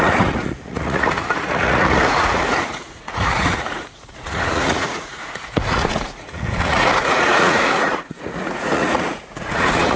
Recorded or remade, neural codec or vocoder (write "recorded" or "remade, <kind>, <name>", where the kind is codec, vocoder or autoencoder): remade, vocoder, Vocos